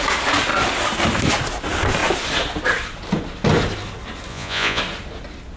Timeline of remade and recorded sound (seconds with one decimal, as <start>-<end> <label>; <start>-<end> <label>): 0.0-4.3 recorded; 4.3-4.8 remade; 4.8-5.6 recorded